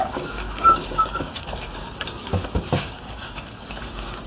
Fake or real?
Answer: fake